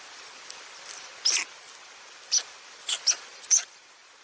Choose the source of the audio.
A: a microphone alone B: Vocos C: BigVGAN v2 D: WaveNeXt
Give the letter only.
A